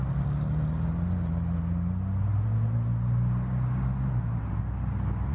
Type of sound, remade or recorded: recorded